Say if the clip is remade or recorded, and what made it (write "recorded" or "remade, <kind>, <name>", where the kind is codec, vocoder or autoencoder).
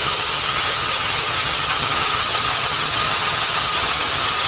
remade, vocoder, HiFi-GAN